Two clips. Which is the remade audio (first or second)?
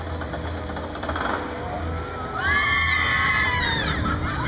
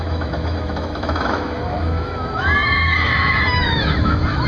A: second